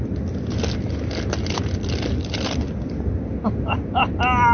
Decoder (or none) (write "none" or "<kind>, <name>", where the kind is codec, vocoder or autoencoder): none